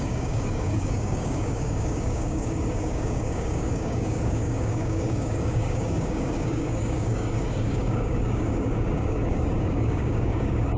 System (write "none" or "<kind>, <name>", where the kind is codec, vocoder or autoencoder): codec, DAC